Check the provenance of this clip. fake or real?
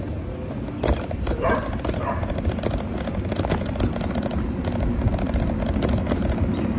real